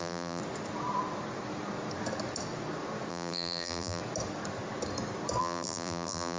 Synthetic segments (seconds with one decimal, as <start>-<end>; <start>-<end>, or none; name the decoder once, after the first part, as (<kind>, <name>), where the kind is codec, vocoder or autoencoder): 0.0-0.4 (vocoder, BigVGAN v2); 3.1-4.0; 5.4-6.4